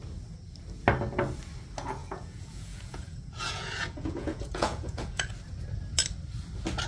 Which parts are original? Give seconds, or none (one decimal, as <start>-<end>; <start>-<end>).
0.0-2.0; 5.3-6.9